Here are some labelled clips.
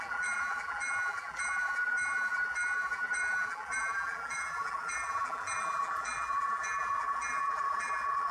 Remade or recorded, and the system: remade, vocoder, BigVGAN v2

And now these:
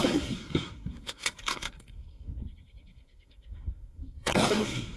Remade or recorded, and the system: remade, codec, SNAC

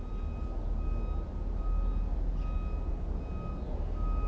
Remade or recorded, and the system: recorded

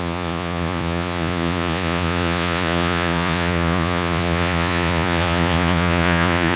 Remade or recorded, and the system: remade, vocoder, Vocos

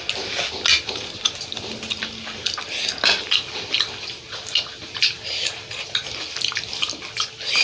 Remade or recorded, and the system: recorded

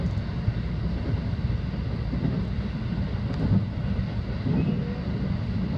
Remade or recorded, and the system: recorded